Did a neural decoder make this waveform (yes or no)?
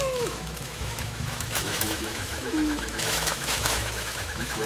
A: yes